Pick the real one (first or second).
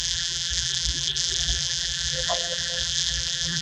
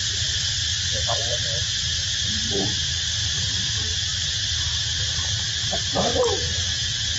second